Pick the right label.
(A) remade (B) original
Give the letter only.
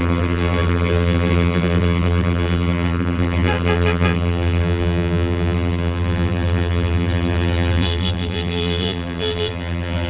A